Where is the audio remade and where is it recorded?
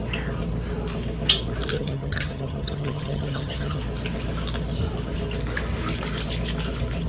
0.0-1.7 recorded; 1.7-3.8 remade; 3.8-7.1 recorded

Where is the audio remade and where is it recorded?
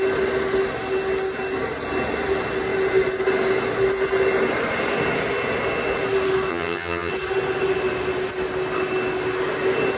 0.0-6.5 recorded; 6.5-7.1 remade; 7.1-10.0 recorded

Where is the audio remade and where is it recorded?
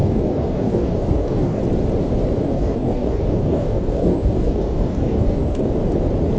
0.0-1.6 remade; 1.6-2.4 recorded; 2.4-5.7 remade; 5.7-6.4 recorded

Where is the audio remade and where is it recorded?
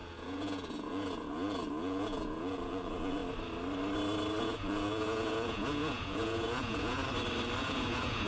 0.0-3.2 remade; 3.2-4.4 recorded; 4.4-7.0 remade; 7.0-7.6 recorded; 7.6-8.3 remade